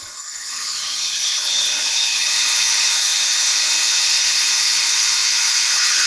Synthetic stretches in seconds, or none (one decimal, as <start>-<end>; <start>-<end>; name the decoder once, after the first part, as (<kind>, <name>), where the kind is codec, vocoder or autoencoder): 0.0-6.1 (codec, HILCodec)